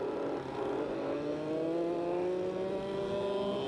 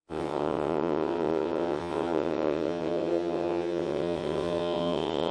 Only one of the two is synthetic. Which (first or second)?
second